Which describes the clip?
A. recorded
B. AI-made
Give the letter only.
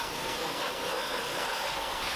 B